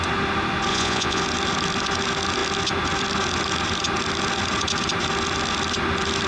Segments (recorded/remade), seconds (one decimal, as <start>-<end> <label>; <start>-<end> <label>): 0.0-0.7 recorded; 0.7-1.2 remade; 1.2-6.3 recorded